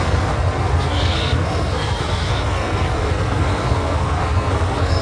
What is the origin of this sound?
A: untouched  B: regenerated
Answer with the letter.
B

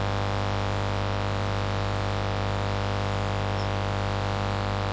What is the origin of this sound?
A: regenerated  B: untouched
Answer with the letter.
B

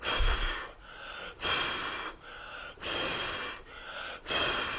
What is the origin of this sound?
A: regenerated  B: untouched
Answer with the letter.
B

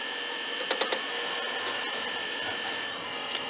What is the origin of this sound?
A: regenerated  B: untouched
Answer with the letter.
B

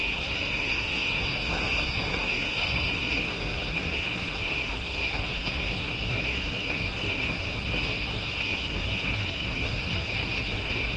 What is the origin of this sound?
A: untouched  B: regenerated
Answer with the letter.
B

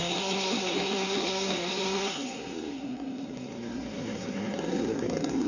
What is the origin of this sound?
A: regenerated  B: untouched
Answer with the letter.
A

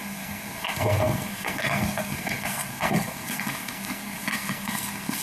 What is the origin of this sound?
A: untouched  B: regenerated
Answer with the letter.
B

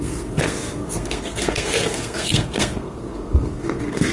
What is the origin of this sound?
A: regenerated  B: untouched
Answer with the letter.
A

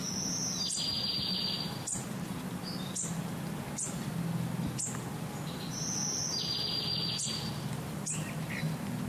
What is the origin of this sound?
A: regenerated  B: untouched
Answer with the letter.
B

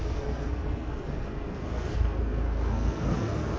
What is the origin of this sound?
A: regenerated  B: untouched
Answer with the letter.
A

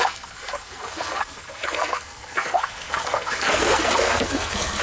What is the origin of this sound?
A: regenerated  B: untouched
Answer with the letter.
A